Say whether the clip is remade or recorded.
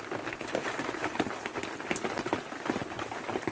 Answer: recorded